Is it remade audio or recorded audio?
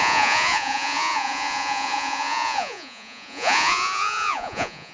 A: remade